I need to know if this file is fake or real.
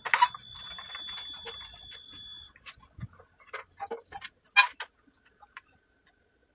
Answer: real